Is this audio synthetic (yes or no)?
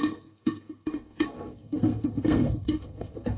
yes